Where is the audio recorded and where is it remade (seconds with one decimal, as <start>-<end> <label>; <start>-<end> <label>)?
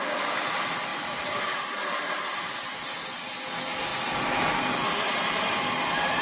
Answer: 0.0-6.2 recorded